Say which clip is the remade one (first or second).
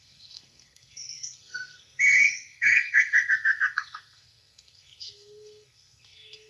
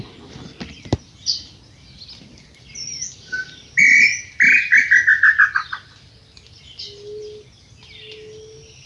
first